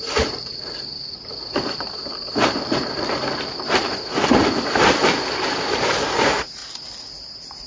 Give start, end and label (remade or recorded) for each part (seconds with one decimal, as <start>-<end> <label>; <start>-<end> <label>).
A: 0.0-6.6 remade; 6.6-7.1 recorded; 7.1-7.7 remade